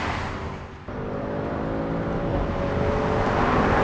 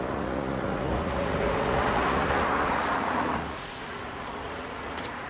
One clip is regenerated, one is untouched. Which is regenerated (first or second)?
second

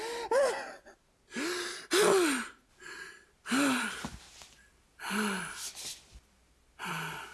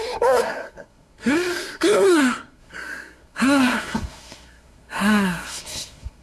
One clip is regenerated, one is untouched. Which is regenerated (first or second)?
second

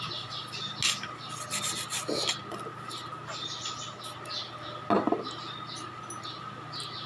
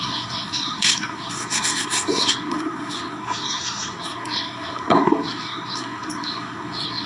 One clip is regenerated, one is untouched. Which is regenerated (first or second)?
second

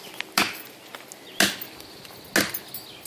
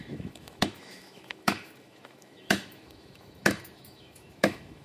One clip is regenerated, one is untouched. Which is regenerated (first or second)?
second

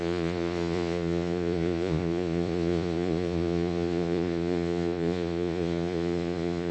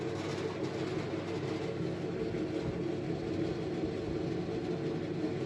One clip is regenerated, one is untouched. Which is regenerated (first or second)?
first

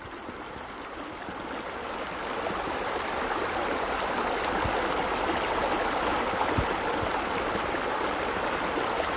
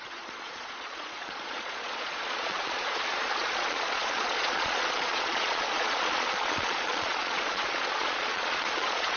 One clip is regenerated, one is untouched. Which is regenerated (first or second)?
second